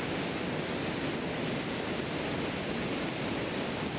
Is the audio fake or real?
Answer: real